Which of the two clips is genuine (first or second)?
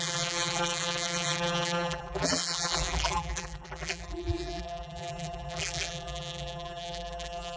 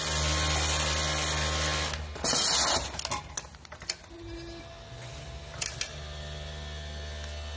second